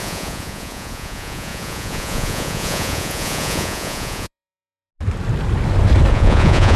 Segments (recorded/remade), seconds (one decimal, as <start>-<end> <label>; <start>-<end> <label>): 0.0-4.9 remade; 4.9-6.1 recorded; 6.1-6.8 remade